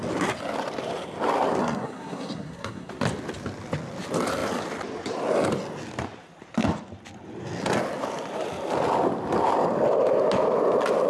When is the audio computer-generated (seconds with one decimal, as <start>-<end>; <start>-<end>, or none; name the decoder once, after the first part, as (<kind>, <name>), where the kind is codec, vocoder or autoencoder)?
1.6-2.9 (codec, SNAC)